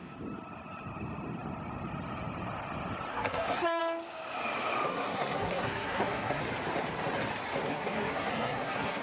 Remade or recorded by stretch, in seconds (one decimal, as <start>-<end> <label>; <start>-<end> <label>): 0.0-3.1 recorded; 3.1-3.8 remade; 3.8-4.9 recorded; 4.9-6.4 remade; 6.4-7.7 recorded; 7.7-9.0 remade

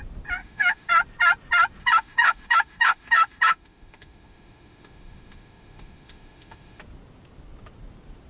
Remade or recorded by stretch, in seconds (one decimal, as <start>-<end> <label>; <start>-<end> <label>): 0.0-0.4 recorded; 0.4-0.9 remade; 0.9-1.8 recorded; 1.8-6.8 remade; 6.8-8.3 recorded

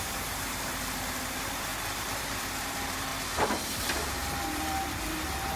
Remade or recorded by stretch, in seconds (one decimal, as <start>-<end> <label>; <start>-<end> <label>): 0.0-0.7 remade; 0.7-1.2 recorded; 1.2-1.7 remade; 1.7-2.2 recorded; 2.2-3.1 remade; 3.1-3.8 recorded; 3.8-5.6 remade

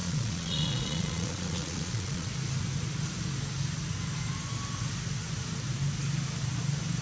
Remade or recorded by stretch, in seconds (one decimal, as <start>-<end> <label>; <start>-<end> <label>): 0.0-2.3 remade; 2.3-7.0 recorded

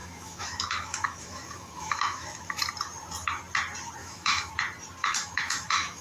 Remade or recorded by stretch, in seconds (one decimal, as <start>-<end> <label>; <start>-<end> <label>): 0.0-2.6 remade; 2.6-4.0 recorded; 4.0-4.5 remade; 4.5-5.0 recorded; 5.0-6.0 remade

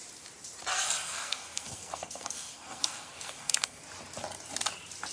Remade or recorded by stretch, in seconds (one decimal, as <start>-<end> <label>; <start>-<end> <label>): 0.0-0.7 recorded; 0.7-3.8 remade; 3.8-5.1 recorded

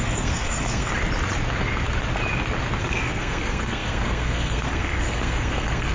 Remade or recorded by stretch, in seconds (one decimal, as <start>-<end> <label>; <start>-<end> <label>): 0.0-0.9 remade; 0.9-2.8 recorded; 2.8-5.9 remade